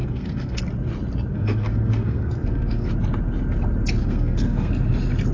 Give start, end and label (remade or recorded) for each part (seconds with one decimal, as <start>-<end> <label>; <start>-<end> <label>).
0.0-0.6 remade; 0.6-1.3 recorded; 1.3-2.9 remade; 2.9-4.0 recorded; 4.0-4.7 remade; 4.7-5.3 recorded